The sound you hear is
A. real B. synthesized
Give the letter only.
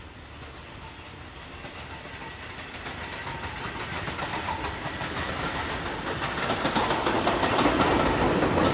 A